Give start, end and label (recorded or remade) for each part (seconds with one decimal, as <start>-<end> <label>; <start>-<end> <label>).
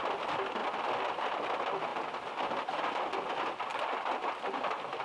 0.0-5.0 recorded